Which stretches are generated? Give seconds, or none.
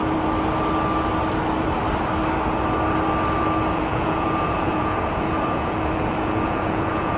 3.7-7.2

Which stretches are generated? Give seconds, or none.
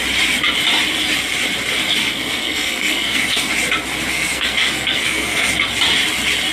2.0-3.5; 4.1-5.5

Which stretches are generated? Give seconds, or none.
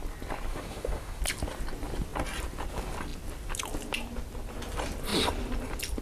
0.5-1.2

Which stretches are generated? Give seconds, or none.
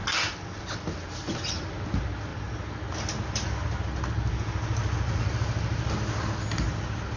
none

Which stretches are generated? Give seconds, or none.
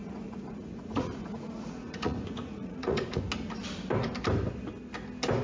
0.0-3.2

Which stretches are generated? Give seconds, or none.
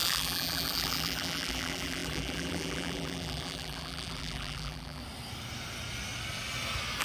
0.0-5.0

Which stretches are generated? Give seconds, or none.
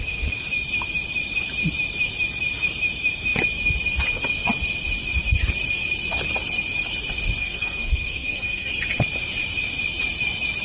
7.4-8.7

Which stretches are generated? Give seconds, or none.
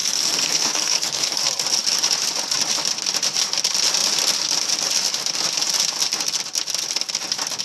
0.0-1.4